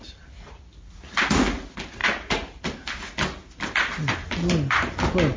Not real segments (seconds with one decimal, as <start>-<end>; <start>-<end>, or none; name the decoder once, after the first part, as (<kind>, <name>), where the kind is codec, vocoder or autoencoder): none